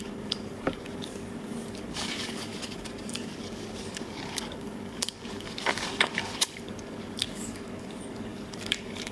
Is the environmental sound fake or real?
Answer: fake